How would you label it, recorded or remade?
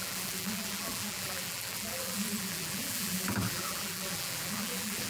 remade